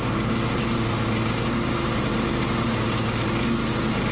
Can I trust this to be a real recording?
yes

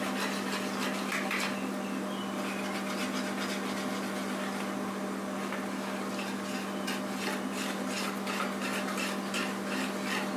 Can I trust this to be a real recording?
yes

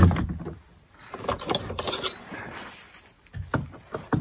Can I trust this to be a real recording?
yes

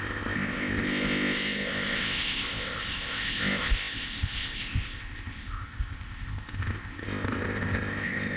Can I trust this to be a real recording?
no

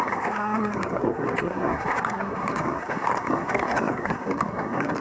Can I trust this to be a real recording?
no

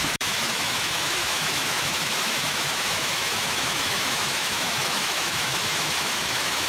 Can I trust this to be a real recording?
no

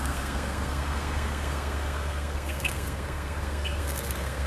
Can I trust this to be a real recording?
no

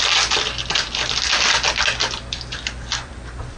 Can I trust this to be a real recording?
yes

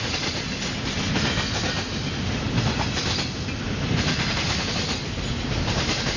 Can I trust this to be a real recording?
yes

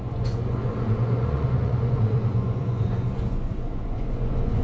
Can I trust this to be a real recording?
no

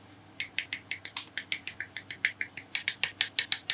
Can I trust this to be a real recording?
yes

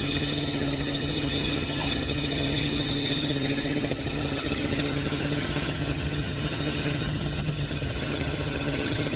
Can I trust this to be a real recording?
no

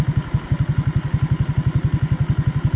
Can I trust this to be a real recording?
yes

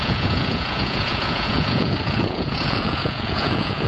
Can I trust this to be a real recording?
no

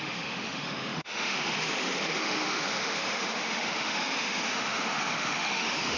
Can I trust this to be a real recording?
no